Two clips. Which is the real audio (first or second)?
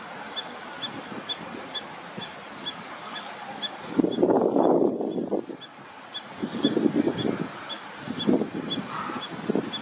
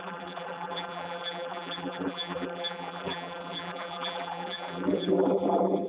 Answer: first